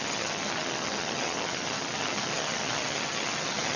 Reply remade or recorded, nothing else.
remade